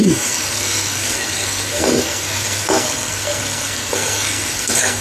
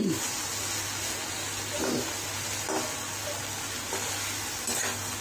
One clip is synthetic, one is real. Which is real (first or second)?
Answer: second